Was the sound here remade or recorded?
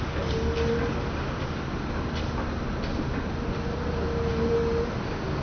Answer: recorded